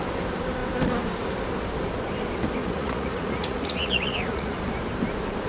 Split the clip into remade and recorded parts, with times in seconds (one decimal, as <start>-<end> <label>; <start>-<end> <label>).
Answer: 0.0-2.6 recorded; 2.6-4.6 remade; 4.6-5.5 recorded